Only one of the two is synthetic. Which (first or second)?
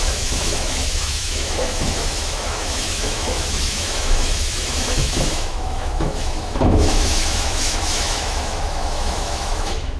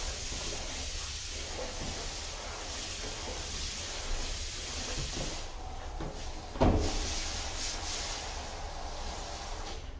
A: first